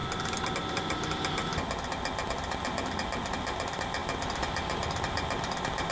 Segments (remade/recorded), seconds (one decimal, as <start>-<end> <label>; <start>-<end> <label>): 0.0-0.5 recorded; 0.5-1.5 remade; 1.5-2.3 recorded; 2.3-5.9 remade